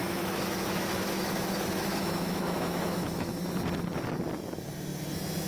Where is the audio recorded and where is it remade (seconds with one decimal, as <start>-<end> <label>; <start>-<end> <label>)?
0.0-3.3 remade; 3.3-5.5 recorded

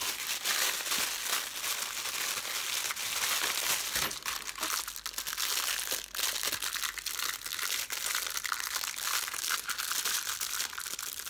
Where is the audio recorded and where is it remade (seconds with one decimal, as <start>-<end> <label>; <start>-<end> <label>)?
0.0-11.3 recorded